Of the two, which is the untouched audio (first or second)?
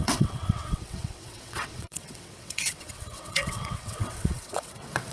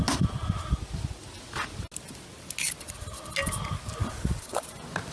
second